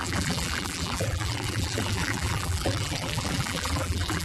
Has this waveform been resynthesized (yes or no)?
yes